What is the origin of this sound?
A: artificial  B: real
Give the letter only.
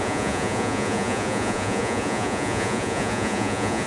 A